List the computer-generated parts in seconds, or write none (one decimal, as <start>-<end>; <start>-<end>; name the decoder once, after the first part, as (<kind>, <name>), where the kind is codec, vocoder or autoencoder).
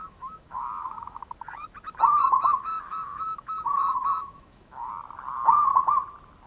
0.0-1.3 (autoencoder, DAC-VAE); 2.2-4.9